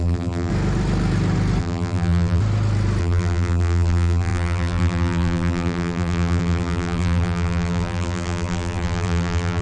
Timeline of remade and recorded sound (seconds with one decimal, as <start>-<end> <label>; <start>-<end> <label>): 0.0-0.5 remade; 0.5-1.6 recorded; 1.6-2.4 remade; 2.4-3.0 recorded; 3.0-9.6 remade